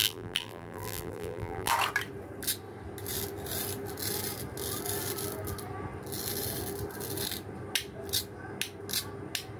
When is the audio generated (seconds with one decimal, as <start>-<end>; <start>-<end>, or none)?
0.0-1.7